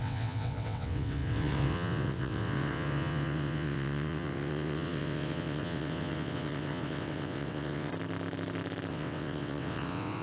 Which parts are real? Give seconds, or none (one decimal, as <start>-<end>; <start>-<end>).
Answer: 7.9-8.9